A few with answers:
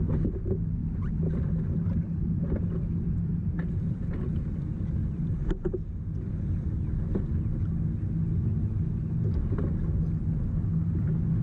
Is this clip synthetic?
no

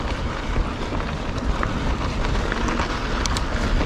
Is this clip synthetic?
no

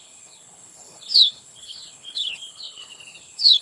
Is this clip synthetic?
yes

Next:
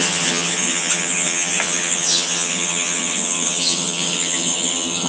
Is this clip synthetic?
yes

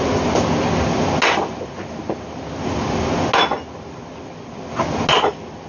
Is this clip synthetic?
no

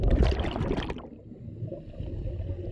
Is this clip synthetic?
no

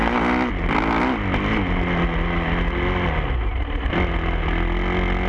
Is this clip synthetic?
no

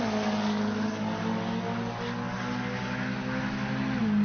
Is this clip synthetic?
no